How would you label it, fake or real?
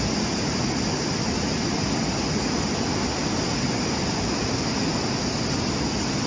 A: real